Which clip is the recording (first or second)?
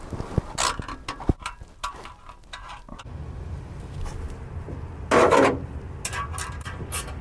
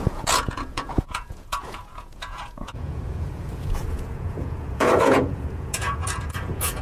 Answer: first